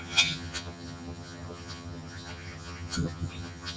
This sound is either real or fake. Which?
fake